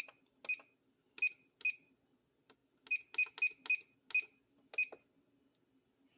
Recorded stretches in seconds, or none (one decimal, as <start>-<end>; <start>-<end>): 0.0-6.2